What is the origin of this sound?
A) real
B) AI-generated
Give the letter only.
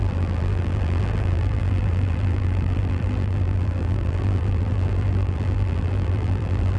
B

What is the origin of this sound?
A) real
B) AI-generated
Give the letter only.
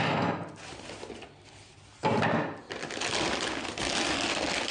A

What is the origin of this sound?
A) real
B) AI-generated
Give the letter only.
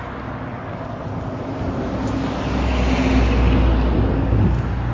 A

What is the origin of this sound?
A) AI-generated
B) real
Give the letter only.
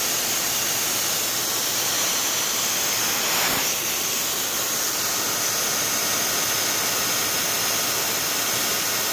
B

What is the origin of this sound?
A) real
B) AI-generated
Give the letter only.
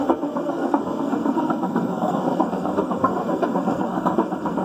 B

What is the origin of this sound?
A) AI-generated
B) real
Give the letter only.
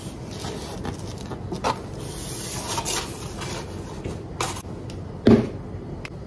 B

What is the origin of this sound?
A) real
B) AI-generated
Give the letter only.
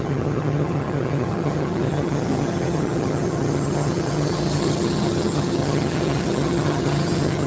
B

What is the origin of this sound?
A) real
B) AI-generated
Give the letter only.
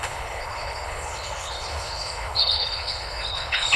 B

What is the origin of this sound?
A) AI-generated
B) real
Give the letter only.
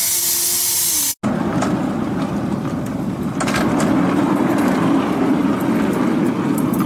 B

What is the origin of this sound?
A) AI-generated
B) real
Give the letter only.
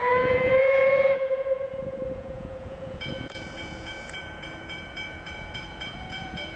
A